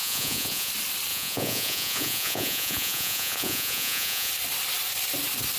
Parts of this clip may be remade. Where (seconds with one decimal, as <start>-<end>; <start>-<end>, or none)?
0.0-0.7; 1.1-4.3